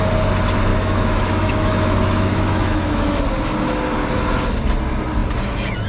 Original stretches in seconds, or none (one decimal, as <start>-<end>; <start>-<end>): 0.0-0.7; 3.2-5.9